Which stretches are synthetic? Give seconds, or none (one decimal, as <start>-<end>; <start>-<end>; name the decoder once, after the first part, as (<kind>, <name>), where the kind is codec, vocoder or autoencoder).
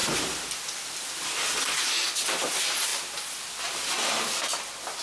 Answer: none